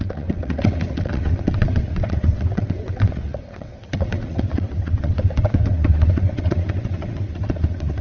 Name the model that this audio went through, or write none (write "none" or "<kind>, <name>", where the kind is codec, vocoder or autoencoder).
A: vocoder, WaveNeXt